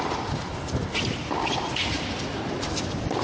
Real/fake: fake